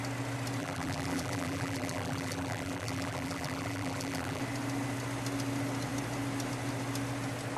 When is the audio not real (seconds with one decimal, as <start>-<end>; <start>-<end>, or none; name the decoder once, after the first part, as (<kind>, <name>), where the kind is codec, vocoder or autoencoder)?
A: 0.6-4.4 (vocoder, BigVGAN v2)